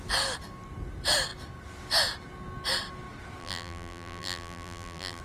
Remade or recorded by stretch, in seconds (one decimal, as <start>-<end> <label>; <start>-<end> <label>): 0.0-3.4 recorded; 3.4-5.2 remade